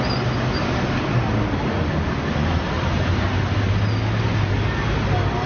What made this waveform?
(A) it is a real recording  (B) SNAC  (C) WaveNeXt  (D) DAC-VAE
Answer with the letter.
A